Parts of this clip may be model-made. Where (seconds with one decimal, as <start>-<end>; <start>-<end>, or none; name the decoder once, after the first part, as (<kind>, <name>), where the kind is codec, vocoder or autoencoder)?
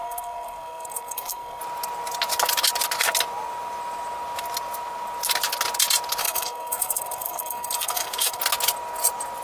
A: 0.0-1.6 (codec, SNAC); 6.2-8.4